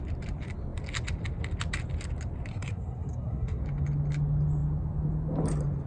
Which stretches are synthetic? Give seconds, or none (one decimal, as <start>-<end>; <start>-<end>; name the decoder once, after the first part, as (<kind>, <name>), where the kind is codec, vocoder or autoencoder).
2.5-3.6 (codec, SNAC)